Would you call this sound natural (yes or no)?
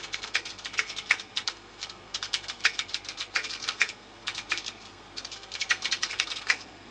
no